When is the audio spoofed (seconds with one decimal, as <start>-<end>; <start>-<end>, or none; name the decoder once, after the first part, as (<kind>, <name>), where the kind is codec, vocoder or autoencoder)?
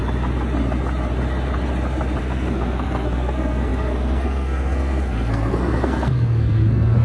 2.2-7.0 (codec, SNAC)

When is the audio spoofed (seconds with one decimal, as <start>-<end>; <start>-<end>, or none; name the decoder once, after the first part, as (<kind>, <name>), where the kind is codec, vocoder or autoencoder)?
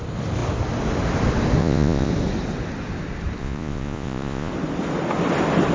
1.6-2.1 (vocoder, Vocos); 3.4-4.5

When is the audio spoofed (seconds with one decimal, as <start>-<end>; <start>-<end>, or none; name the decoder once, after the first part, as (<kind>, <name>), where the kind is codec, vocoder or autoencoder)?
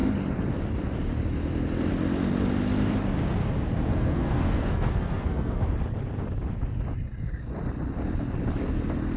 3.9-5.7 (codec, SNAC)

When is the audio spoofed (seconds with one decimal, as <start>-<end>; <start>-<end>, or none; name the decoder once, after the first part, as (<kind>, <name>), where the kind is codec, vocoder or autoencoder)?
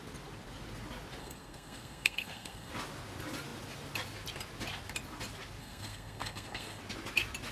1.2-2.7 (codec, SNAC); 5.6-6.8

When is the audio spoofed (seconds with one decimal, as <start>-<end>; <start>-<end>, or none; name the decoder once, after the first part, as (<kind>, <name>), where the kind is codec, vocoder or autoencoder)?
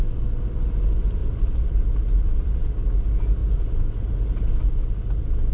1.2-2.7 (vocoder, BigVGAN v2)